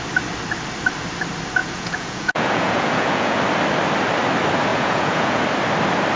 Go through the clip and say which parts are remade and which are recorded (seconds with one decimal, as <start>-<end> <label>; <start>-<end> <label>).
0.0-1.6 recorded; 1.6-3.4 remade; 3.4-4.7 recorded; 4.7-5.4 remade; 5.4-6.2 recorded